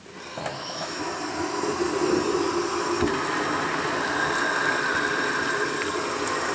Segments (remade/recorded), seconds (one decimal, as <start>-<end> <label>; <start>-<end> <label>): 0.0-0.5 recorded; 0.5-1.1 remade; 1.1-6.5 recorded